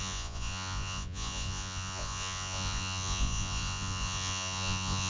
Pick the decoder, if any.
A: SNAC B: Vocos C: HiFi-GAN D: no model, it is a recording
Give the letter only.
B